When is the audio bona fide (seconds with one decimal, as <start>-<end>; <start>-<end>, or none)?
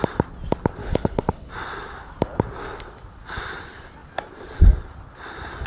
0.0-0.8; 1.5-5.7